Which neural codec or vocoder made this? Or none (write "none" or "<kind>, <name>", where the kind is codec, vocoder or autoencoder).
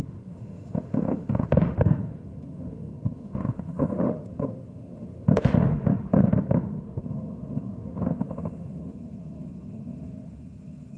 autoencoder, DAC-VAE